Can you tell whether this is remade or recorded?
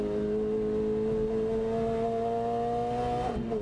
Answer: recorded